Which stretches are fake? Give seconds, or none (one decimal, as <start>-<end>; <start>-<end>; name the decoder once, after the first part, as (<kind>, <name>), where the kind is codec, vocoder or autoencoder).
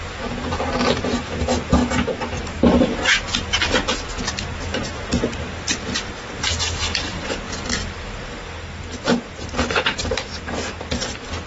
none